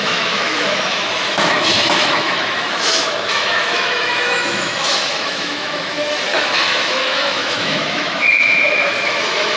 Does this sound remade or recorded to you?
remade